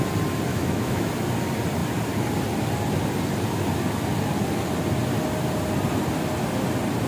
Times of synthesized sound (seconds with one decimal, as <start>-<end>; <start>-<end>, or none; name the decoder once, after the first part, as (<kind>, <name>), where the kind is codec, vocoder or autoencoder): 0.5-1.1 (autoencoder, DAC-VAE)